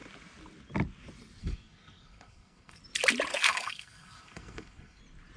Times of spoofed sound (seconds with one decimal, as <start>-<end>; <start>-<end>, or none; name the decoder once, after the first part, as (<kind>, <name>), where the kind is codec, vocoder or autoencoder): 1.4-2.8 (codec, SNAC); 3.3-5.0